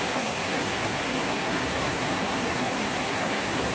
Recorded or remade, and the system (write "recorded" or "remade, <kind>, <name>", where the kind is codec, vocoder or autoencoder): remade, codec, SNAC